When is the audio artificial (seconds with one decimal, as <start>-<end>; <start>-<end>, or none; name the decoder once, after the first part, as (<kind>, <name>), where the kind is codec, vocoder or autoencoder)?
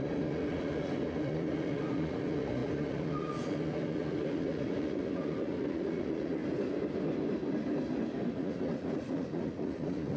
0.0-6.4 (vocoder, Vocos); 8.3-10.2